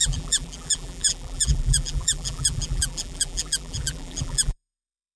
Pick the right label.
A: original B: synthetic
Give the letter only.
B